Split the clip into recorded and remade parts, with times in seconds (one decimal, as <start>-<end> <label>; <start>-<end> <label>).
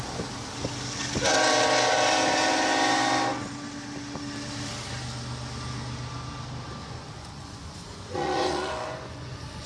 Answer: 0.0-6.8 recorded; 6.8-9.7 remade